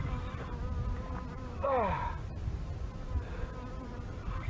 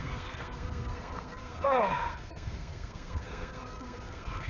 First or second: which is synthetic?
second